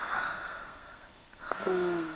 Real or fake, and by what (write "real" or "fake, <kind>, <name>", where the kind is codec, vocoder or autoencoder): fake, codec, SNAC